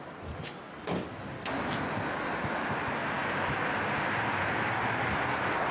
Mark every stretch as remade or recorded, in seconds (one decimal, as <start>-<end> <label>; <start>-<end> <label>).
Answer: 0.0-5.7 recorded